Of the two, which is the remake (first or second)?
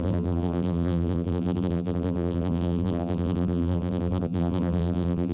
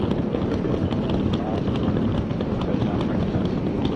first